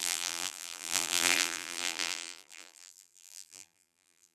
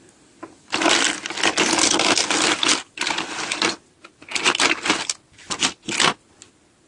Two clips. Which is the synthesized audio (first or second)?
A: first